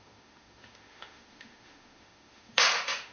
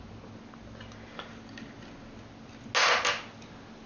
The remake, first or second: first